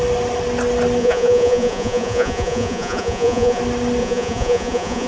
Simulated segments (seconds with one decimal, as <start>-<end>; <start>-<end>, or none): 1.0-3.6; 4.0-5.1

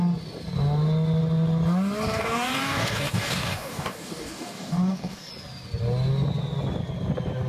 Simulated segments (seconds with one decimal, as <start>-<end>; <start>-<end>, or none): 2.1-5.3

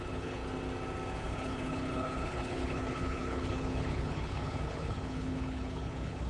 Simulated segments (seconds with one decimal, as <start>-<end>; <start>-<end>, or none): 0.0-0.4; 1.2-6.3

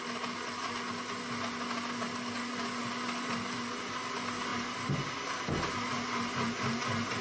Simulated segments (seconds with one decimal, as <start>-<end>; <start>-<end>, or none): none